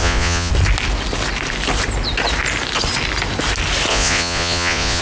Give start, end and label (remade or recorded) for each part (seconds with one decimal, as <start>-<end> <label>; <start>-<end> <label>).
0.0-0.5 remade; 0.5-3.9 recorded; 3.9-5.0 remade